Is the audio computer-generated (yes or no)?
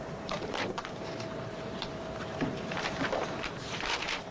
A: yes